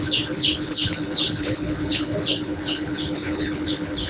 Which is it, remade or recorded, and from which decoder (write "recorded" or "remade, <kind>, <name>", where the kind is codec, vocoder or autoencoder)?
remade, codec, HILCodec